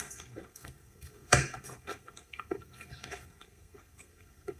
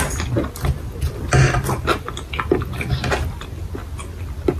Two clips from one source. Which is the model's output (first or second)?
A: first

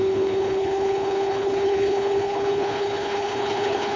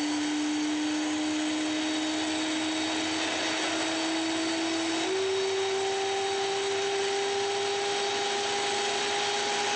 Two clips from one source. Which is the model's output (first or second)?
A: first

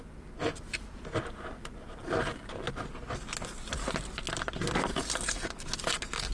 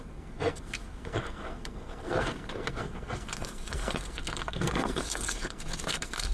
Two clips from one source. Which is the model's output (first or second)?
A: second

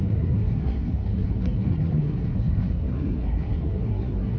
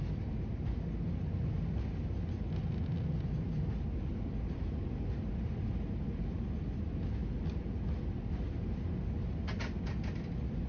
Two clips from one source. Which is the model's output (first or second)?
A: first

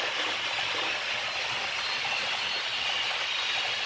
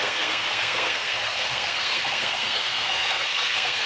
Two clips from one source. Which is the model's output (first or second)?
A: second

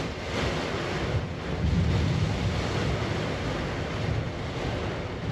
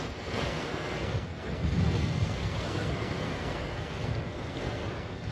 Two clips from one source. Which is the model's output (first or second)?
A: second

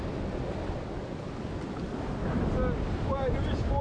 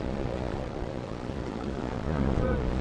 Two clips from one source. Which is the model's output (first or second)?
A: second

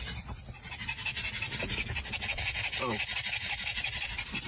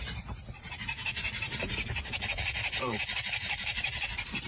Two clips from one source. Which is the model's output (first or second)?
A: second